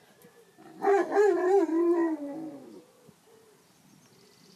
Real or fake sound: real